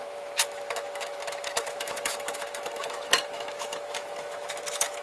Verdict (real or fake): fake